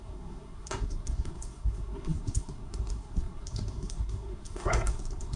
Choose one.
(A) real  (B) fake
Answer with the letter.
B